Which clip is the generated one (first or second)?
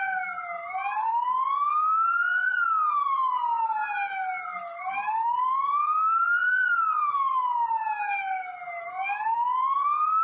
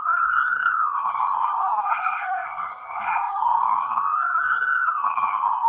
second